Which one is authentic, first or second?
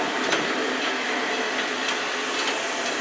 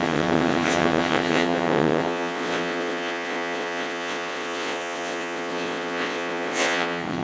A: first